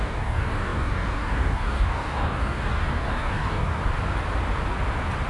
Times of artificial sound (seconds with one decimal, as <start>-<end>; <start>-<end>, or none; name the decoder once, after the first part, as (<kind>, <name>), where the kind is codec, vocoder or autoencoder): 0.0-3.8 (codec, DAC)